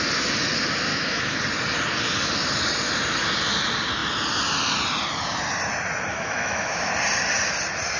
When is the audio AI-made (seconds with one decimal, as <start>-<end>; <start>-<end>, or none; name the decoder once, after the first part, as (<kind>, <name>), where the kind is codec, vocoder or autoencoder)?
0.9-1.4 (autoencoder, DAC-VAE); 6.1-6.9